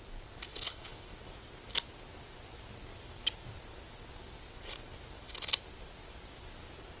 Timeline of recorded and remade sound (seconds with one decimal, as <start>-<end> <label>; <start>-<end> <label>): 0.0-0.5 recorded; 0.5-1.1 remade; 1.1-7.0 recorded

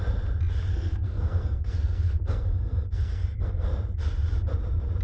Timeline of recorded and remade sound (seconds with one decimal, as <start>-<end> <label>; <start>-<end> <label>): 0.0-0.7 recorded; 0.7-3.7 remade; 3.7-5.0 recorded

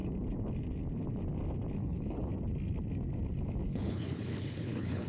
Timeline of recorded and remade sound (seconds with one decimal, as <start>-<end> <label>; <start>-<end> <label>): 0.0-1.8 recorded; 1.8-2.3 remade; 2.3-3.7 recorded; 3.7-5.1 remade

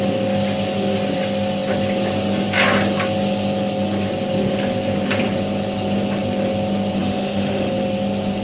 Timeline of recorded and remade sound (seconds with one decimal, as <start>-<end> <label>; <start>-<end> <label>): 0.0-7.0 recorded; 7.0-7.7 remade; 7.7-8.4 recorded

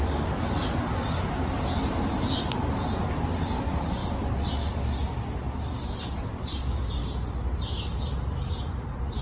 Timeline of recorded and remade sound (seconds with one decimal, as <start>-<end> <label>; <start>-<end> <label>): 0.0-9.2 recorded

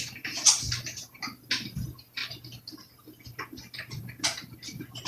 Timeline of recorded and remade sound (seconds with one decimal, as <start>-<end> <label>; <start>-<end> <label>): 0.0-5.1 recorded

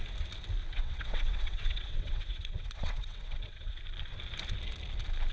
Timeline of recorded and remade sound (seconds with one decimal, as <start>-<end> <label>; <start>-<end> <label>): 0.0-0.6 recorded; 0.6-3.8 remade; 3.8-5.3 recorded

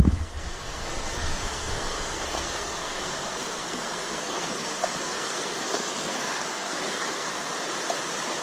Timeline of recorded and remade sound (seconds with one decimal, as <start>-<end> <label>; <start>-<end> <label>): 0.0-7.5 remade; 7.5-8.4 recorded